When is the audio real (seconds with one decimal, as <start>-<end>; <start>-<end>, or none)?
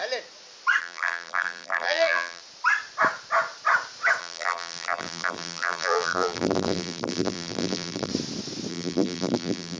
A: 0.0-0.8; 2.4-4.2; 8.1-8.7